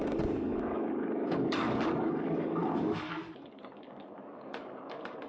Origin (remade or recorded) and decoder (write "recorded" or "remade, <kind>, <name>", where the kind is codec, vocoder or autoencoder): remade, codec, DAC